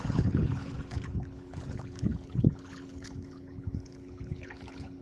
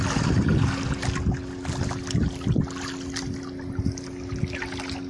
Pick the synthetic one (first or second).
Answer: first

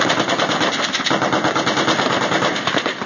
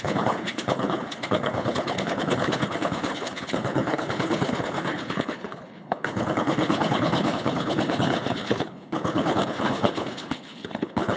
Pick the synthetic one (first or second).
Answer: second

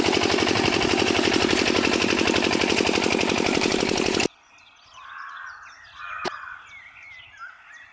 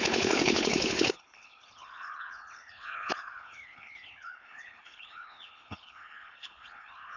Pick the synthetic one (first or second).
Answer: second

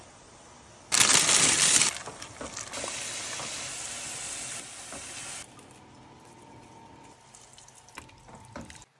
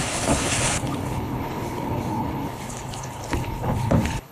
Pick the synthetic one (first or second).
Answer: second